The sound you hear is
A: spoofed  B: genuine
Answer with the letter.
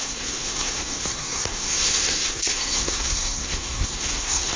A